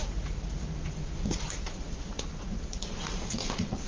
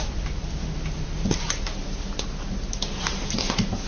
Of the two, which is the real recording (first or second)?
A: second